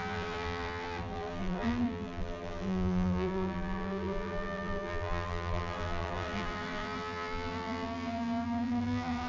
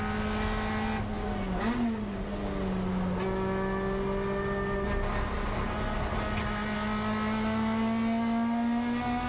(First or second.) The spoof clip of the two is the first